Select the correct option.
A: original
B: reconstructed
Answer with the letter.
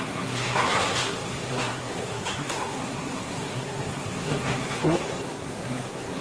B